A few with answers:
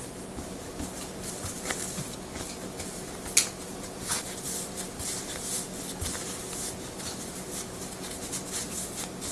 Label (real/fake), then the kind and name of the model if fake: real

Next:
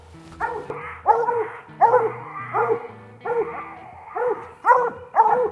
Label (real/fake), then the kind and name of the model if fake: real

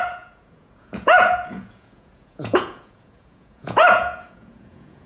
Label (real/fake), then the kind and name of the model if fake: fake, vocoder, Vocos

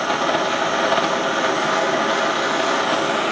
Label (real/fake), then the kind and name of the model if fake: real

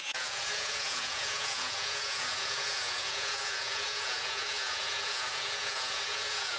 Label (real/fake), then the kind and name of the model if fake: fake, vocoder, Vocos